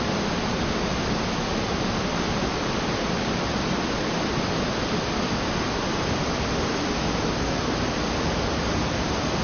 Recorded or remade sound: recorded